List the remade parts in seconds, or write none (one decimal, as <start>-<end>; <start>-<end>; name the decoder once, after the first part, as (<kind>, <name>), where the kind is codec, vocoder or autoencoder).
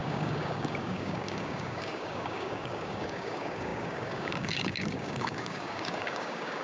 0.0-6.6 (codec, DAC)